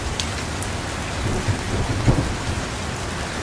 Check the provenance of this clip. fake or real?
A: real